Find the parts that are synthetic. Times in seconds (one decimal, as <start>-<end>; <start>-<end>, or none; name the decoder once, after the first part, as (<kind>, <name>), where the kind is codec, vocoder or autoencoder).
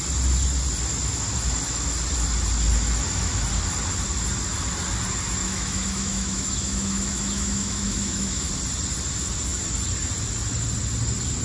5.4-8.5 (autoencoder, DAC-VAE)